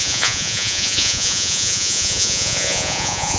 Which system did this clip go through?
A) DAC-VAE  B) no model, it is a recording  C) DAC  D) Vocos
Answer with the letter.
D